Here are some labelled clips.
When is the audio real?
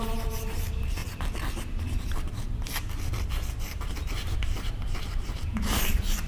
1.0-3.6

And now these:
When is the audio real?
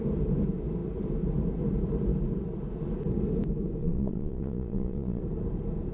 0.0-3.8; 5.2-5.9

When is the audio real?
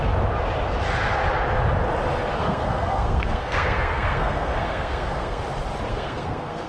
0.0-2.4; 5.4-5.9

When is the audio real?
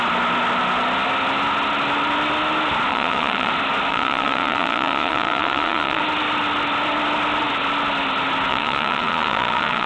0.0-2.9; 3.5-3.9; 6.0-8.5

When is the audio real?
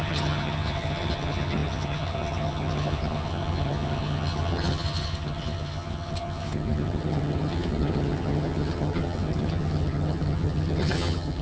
none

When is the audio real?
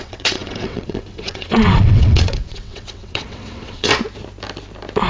3.9-5.1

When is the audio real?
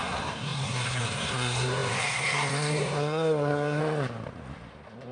3.8-5.1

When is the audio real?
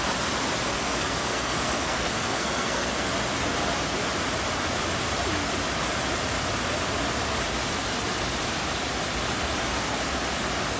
0.0-0.7; 3.1-10.8